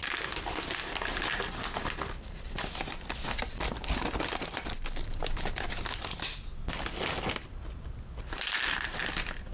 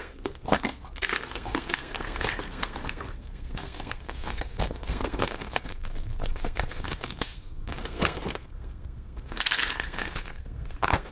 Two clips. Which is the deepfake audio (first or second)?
second